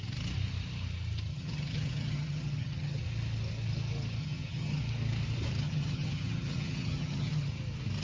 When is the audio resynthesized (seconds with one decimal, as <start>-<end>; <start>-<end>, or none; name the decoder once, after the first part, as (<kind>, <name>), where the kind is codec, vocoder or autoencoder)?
1.3-3.0 (vocoder, HiFi-GAN); 4.2-4.8; 5.6-7.5